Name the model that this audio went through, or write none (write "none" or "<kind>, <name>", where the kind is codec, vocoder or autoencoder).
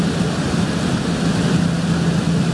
none